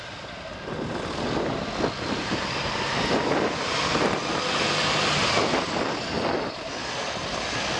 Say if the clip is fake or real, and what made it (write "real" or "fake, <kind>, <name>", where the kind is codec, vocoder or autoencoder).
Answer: real